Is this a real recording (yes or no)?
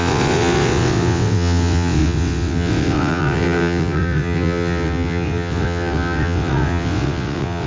no